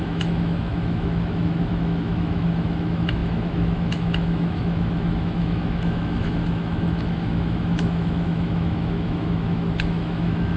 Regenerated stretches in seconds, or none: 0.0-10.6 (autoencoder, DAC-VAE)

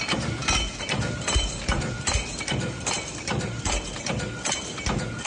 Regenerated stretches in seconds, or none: 0.4-3.6 (vocoder, BigVGAN v2)

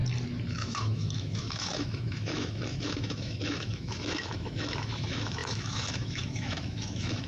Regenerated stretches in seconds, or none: 0.5-7.3 (autoencoder, DAC-VAE)

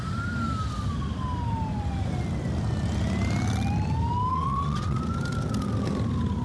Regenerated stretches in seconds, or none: 4.3-5.0 (vocoder, WaveNeXt)

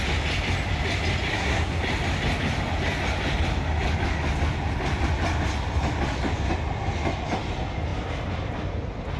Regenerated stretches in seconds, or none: 1.3-1.8 (codec, SNAC)

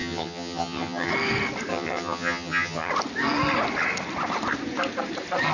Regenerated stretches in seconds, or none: 0.0-1.1 (vocoder, HiFi-GAN); 1.7-2.9